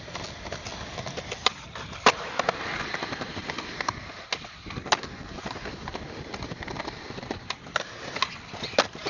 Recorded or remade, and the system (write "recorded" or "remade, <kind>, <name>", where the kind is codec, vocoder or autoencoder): recorded